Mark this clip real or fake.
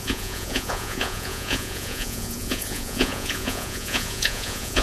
fake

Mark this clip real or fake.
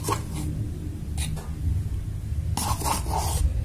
real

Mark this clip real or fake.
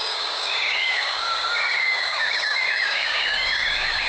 fake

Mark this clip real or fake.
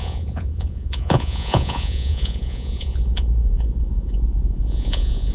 fake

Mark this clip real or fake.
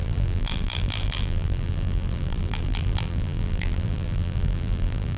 fake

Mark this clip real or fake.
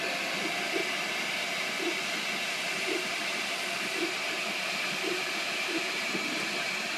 real